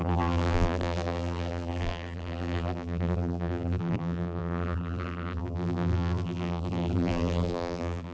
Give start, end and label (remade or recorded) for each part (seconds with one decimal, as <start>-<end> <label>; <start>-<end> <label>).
0.0-8.1 remade